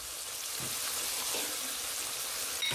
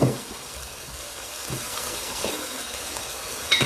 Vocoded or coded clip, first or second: second